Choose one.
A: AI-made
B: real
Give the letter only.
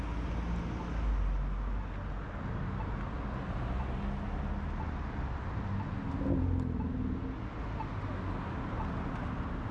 B